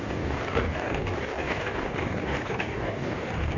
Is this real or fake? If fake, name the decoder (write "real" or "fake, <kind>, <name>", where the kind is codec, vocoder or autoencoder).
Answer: fake, codec, DAC